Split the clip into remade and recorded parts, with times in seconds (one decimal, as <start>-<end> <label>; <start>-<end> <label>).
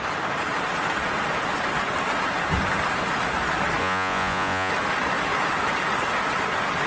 0.0-3.8 recorded; 3.8-4.7 remade; 4.7-6.9 recorded